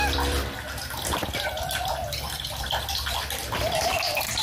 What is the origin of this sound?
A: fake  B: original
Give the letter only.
A